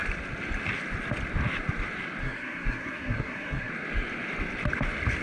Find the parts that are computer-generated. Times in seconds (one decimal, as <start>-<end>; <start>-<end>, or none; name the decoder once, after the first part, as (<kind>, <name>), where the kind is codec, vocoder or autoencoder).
2.2-3.7 (codec, SNAC)